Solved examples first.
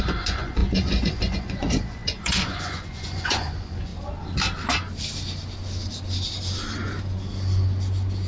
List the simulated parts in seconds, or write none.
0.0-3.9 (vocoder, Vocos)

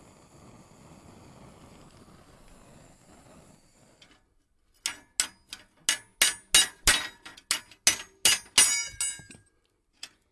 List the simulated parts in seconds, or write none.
none

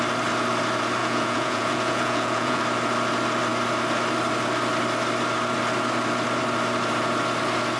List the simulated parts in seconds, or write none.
1.0-2.6 (vocoder, Vocos)

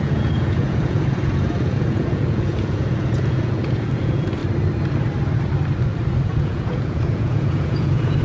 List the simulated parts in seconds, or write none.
0.0-4.4 (vocoder, Vocos); 6.2-8.2

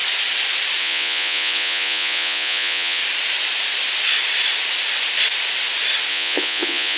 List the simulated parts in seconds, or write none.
0.8-3.0 (vocoder, Vocos); 6.1-7.0

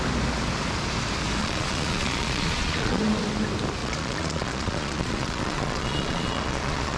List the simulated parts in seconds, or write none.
1.4-3.0 (vocoder, Vocos); 3.8-7.0

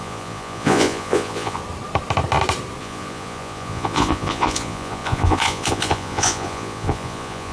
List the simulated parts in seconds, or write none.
0.0-1.6 (vocoder, Vocos); 2.8-7.5

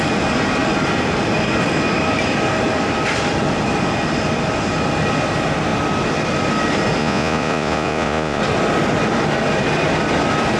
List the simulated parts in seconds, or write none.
7.0-8.4 (vocoder, Vocos)